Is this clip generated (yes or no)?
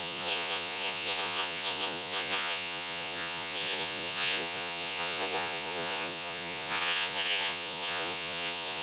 yes